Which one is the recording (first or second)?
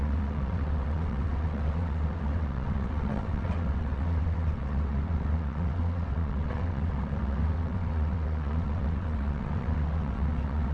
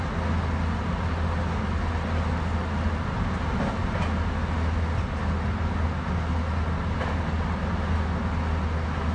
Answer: second